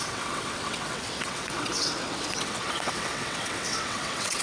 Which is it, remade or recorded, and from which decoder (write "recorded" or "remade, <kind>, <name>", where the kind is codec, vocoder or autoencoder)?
remade, vocoder, WaveNeXt